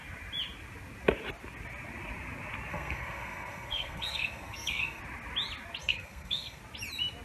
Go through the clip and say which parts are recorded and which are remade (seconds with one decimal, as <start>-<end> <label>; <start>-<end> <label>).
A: 0.0-2.7 recorded; 2.7-5.0 remade; 5.0-5.8 recorded; 5.8-6.6 remade; 6.6-7.2 recorded